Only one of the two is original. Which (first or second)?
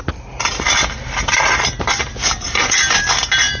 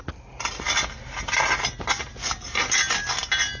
second